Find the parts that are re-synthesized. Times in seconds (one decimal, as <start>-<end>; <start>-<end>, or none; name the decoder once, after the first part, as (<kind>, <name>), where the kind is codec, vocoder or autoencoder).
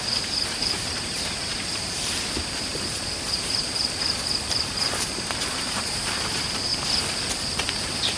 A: 0.0-6.7 (vocoder, BigVGAN v2); 7.3-8.2